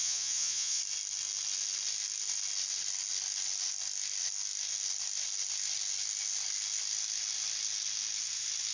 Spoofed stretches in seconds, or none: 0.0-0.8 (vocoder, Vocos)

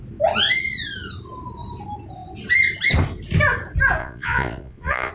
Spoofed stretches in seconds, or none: 4.0-5.1 (vocoder, Vocos)

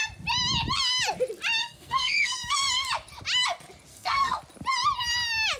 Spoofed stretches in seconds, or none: 1.6-2.9 (codec, SNAC); 3.9-4.4